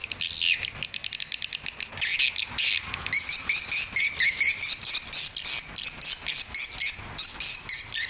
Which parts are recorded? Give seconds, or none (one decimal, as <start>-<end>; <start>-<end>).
0.0-8.1